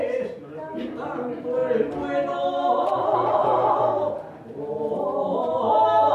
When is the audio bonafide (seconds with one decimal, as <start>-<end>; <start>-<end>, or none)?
1.6-2.9

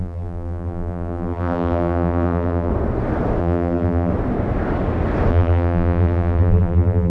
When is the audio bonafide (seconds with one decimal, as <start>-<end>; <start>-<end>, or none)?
2.7-3.4; 4.1-5.3

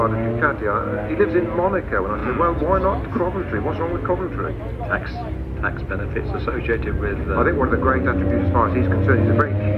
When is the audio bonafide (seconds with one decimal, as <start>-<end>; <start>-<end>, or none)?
0.0-9.8

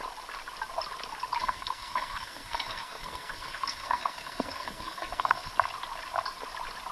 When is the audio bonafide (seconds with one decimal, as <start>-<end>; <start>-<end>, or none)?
0.0-1.4; 5.5-6.9